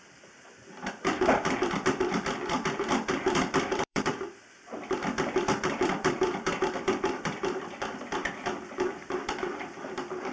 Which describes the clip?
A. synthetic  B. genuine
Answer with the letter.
A